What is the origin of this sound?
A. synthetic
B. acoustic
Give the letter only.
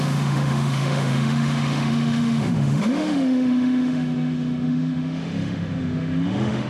A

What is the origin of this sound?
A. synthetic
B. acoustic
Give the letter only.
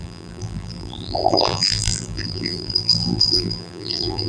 A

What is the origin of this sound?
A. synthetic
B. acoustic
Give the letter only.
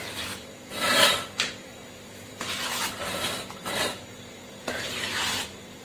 A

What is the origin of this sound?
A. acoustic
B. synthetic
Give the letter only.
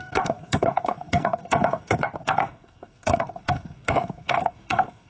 B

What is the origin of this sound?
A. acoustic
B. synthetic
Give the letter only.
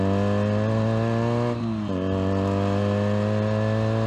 A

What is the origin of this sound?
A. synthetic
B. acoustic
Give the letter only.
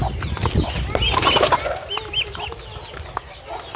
B